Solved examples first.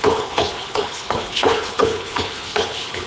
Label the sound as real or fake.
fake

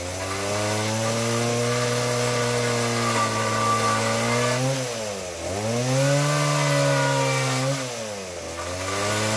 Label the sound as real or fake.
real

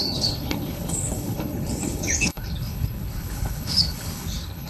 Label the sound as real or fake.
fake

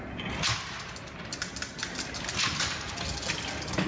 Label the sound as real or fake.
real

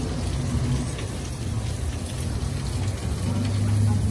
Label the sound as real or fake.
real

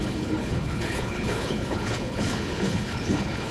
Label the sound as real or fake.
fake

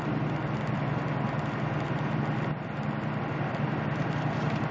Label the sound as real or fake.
real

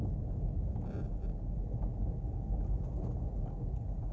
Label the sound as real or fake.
real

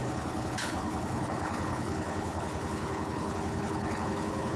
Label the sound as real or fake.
fake